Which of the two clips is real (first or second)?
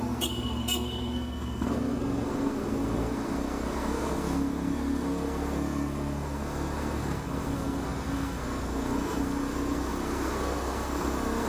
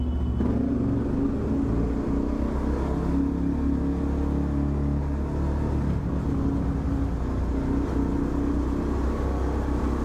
second